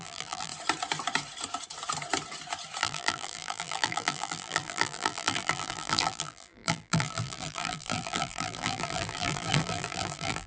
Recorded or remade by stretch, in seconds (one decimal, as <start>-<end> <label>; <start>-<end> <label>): 0.0-0.5 remade; 0.5-2.8 recorded; 2.8-10.5 remade